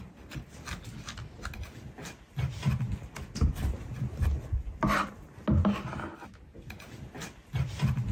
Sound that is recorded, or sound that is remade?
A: recorded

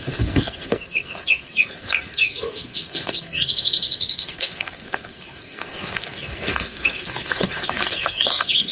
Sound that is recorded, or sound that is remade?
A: remade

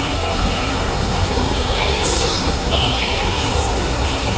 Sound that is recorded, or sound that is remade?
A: remade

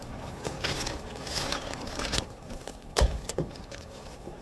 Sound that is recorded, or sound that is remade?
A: remade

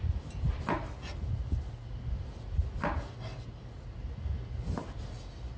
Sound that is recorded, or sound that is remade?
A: recorded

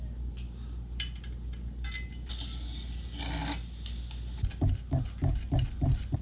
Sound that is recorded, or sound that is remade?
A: recorded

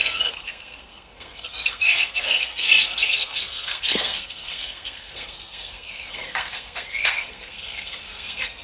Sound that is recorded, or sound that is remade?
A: remade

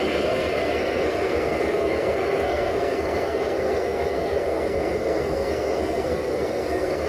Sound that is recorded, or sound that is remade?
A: remade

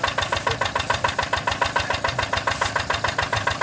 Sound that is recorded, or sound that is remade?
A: recorded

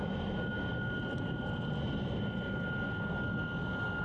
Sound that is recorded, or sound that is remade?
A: recorded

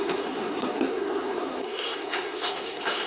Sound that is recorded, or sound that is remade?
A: remade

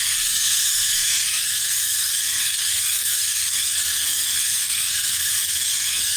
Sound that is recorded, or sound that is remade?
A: remade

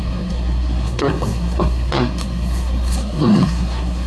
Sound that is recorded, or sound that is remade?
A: remade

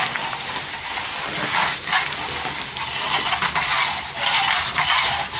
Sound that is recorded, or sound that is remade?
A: recorded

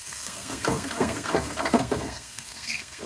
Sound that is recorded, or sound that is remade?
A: remade